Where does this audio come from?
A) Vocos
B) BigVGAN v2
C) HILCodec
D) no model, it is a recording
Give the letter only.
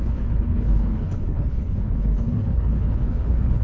C